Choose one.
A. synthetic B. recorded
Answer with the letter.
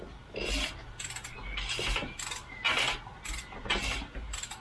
B